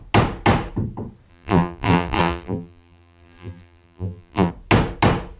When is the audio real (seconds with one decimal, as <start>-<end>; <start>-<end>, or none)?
0.0-1.3; 4.5-5.4